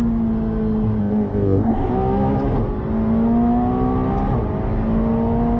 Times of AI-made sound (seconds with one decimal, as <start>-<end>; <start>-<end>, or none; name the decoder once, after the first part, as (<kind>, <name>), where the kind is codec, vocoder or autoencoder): 1.0-1.9 (codec, ZipCodec)

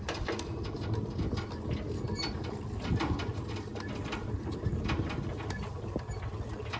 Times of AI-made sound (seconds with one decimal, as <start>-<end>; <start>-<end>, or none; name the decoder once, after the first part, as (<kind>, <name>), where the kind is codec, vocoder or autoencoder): none

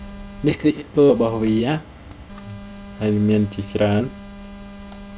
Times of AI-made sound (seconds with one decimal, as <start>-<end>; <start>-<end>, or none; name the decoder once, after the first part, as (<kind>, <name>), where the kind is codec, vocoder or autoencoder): 0.5-1.1 (codec, ZipCodec); 1.6-2.3

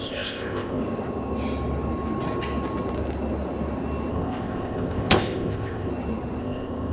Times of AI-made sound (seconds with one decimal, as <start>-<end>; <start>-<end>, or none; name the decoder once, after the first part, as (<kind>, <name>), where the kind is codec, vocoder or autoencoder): 0.0-0.8 (codec, ZipCodec); 4.1-5.9; 6.4-6.9